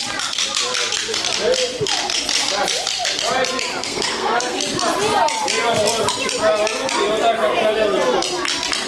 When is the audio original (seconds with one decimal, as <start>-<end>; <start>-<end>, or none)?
0.0-3.8; 4.6-8.9